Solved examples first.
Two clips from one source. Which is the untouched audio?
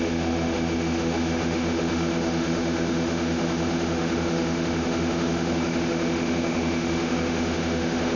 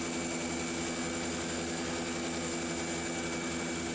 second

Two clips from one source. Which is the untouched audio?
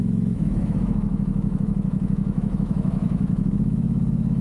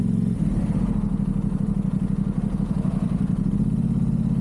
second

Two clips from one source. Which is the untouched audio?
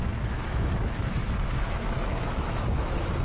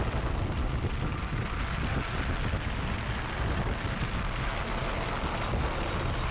second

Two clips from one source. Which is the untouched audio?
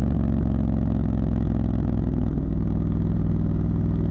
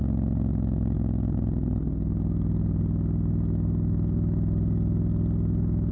second